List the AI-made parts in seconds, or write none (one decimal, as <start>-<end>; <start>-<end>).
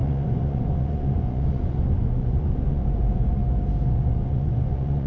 0.0-3.4; 3.9-5.1